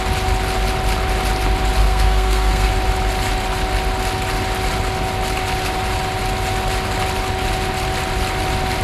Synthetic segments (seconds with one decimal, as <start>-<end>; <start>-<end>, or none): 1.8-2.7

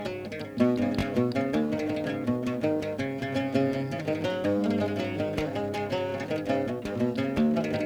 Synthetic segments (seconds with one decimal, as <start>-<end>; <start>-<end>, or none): none

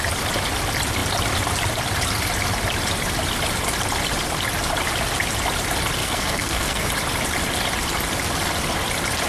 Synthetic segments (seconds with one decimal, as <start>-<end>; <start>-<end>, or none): 6.0-6.9

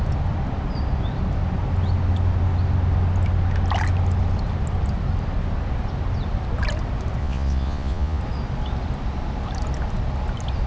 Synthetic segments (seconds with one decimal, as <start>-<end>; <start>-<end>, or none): 7.2-8.2

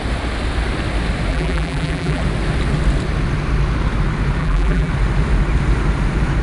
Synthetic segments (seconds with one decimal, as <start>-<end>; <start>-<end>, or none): 1.3-2.2; 4.4-4.9

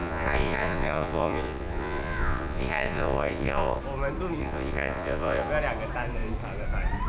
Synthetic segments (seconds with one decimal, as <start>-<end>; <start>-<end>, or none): 0.0-3.8; 4.4-5.5

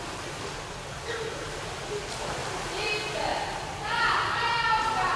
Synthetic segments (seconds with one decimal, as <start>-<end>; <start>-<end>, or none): none

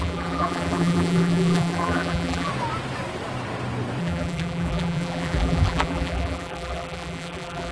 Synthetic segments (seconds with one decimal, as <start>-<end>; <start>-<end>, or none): 0.0-2.5; 4.0-7.7